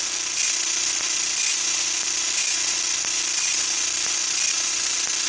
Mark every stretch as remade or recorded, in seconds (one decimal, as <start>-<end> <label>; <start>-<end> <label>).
0.0-5.3 recorded